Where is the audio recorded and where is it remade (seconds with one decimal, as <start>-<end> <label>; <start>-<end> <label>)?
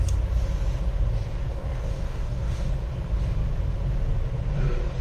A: 0.0-1.5 recorded; 1.5-2.7 remade; 2.7-5.0 recorded